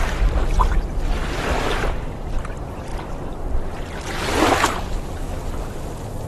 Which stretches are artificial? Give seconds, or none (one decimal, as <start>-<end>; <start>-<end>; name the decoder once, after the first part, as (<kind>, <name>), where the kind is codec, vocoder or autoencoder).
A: 0.0-2.9 (vocoder, BigVGAN v2)